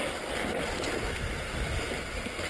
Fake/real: real